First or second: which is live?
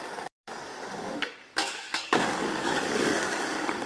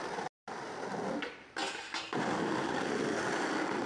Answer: second